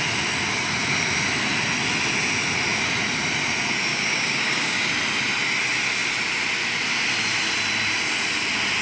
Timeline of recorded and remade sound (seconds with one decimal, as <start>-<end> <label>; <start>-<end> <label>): 0.0-3.9 recorded; 3.9-4.9 remade; 4.9-8.8 recorded